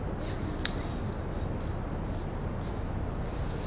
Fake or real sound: real